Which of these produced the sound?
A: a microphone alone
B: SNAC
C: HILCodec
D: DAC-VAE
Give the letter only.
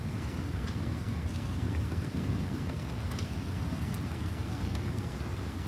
B